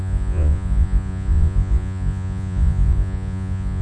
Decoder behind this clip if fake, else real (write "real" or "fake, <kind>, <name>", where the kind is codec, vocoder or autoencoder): fake, vocoder, Vocos